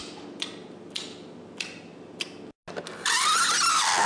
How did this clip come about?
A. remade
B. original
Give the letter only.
B